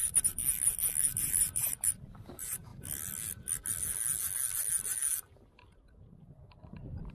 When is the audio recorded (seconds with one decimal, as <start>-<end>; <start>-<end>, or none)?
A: 0.4-1.2; 2.7-7.1